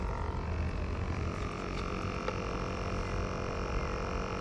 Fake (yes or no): no